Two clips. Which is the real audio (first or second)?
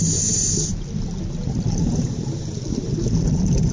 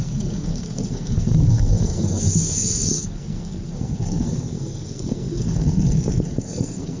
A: first